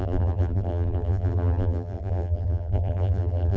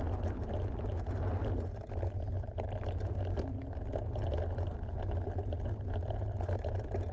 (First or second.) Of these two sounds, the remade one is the first